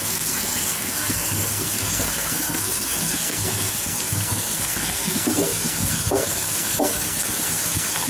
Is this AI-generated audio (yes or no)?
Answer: yes